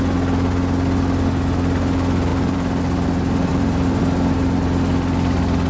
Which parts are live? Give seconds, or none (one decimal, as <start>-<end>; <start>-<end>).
0.0-2.3; 2.8-3.5; 4.0-5.7